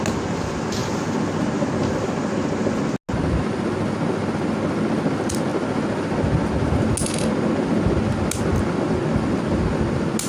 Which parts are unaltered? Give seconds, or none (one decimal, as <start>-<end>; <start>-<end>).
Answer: 0.0-10.3